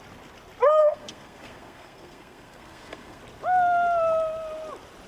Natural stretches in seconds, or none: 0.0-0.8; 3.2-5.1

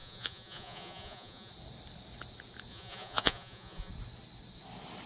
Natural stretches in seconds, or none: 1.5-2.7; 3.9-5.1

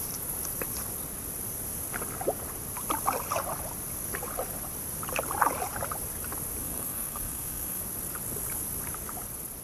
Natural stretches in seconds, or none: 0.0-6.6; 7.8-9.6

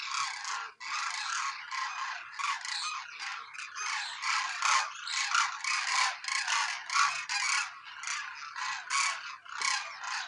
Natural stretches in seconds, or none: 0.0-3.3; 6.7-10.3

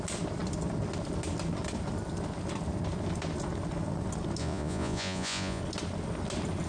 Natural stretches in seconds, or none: 0.0-4.4; 5.6-6.7

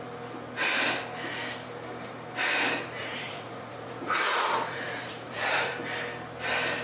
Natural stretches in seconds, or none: 0.0-3.0; 5.7-6.8